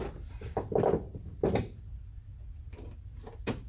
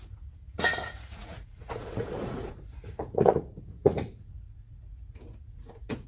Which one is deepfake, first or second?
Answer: second